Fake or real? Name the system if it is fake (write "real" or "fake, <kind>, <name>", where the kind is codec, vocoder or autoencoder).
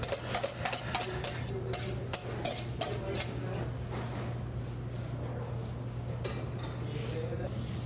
real